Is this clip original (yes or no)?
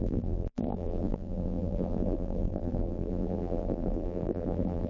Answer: no